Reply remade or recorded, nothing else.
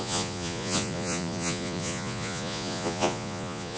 remade